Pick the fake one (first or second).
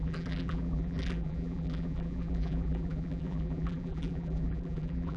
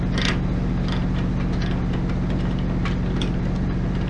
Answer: first